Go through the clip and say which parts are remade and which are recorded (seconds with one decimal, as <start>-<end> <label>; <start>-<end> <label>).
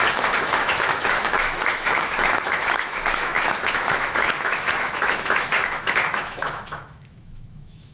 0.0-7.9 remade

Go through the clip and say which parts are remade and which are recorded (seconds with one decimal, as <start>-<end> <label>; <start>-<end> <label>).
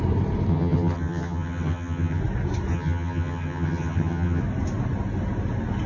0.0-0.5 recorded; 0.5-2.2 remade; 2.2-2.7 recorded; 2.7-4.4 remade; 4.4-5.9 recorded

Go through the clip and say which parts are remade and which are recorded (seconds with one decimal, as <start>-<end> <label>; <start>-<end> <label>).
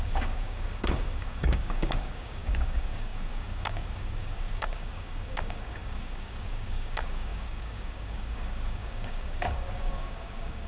0.0-10.7 remade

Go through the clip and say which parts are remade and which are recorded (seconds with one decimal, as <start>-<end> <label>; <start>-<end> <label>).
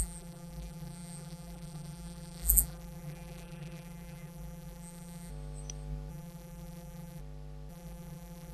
0.0-5.3 remade; 5.3-6.1 recorded; 6.1-7.2 remade; 7.2-7.7 recorded; 7.7-8.5 remade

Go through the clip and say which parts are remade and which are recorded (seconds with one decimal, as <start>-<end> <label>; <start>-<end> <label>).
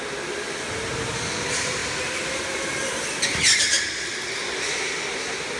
0.0-5.6 recorded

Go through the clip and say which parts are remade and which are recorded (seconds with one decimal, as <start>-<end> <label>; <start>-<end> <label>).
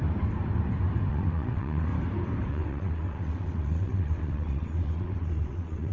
0.0-1.1 recorded; 1.1-1.9 remade; 1.9-2.5 recorded; 2.5-5.9 remade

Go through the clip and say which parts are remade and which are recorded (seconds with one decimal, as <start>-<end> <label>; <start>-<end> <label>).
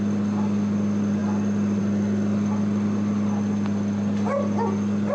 0.0-5.1 recorded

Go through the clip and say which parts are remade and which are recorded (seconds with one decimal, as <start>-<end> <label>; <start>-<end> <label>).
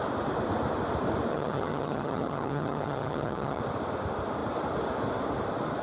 0.0-1.3 recorded; 1.3-3.6 remade; 3.6-5.8 recorded